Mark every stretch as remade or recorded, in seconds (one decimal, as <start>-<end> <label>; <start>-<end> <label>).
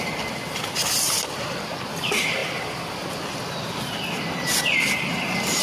0.0-5.6 recorded